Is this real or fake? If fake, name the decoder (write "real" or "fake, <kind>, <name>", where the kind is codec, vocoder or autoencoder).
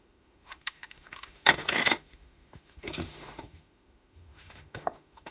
fake, autoencoder, DAC-VAE